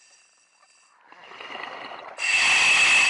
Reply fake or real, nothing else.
real